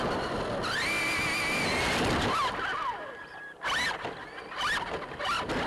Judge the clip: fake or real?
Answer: real